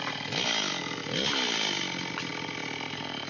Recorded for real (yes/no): yes